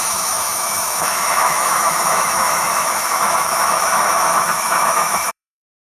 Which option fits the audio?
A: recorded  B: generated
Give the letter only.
B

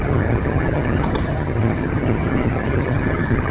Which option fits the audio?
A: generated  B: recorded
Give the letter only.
A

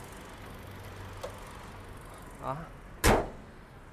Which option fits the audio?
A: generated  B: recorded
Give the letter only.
B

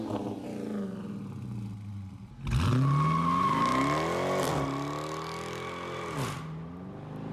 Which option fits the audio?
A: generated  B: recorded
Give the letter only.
B